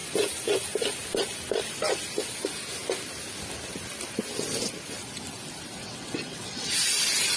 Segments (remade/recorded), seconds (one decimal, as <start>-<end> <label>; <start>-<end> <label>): 0.0-5.8 recorded; 5.8-6.7 remade; 6.7-7.4 recorded